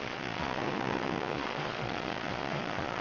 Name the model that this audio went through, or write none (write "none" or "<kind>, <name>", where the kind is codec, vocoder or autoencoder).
vocoder, Vocos